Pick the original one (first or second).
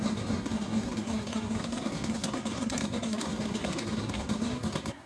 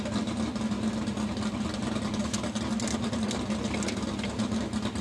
second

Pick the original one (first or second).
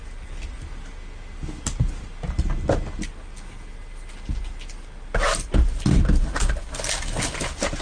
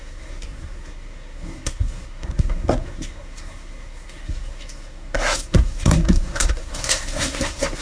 first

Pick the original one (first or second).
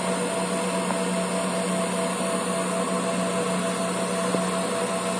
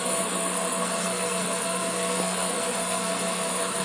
first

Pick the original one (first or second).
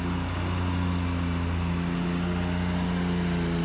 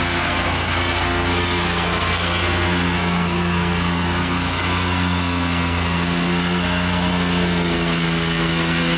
first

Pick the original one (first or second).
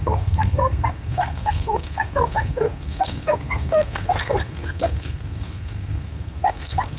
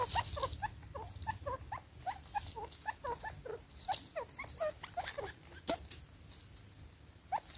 second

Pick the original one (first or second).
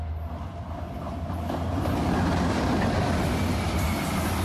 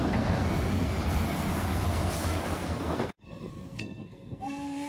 first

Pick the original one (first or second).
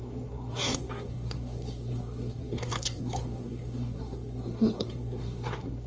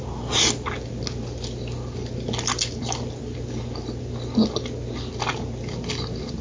second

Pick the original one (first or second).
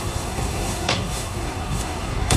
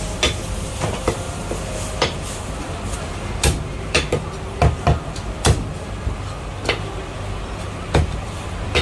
second